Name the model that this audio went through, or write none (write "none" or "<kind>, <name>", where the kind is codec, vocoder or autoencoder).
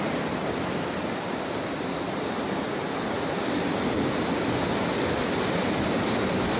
none